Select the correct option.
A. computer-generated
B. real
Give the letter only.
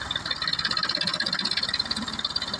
B